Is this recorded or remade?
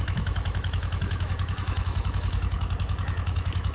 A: remade